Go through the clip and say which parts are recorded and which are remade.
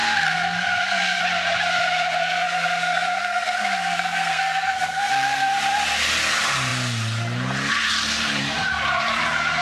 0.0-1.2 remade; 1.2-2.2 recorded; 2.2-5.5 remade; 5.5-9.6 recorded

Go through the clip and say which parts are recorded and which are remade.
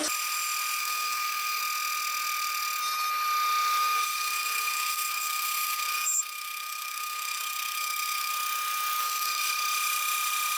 0.0-0.8 recorded; 0.8-1.6 remade; 1.6-3.8 recorded; 3.8-8.3 remade; 8.3-9.0 recorded; 9.0-9.5 remade; 9.5-10.6 recorded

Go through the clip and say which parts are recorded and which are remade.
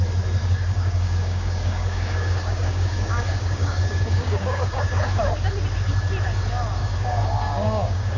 0.0-0.4 recorded; 0.4-5.1 remade; 5.1-6.8 recorded; 6.8-8.2 remade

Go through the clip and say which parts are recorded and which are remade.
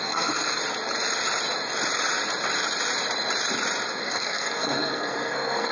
0.0-0.6 remade; 0.6-4.0 recorded; 4.0-5.7 remade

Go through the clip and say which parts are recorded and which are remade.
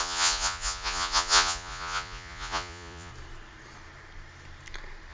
0.0-3.1 remade; 3.1-5.1 recorded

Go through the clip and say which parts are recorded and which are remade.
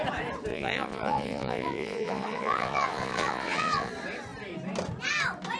0.0-0.5 recorded; 0.5-3.9 remade; 3.9-5.6 recorded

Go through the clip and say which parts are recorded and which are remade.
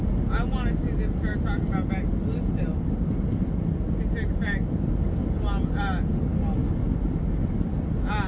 0.0-8.3 recorded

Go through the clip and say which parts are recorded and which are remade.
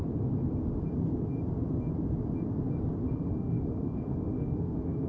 0.0-3.1 recorded; 3.1-5.1 remade